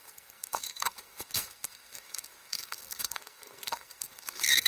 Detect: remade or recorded remade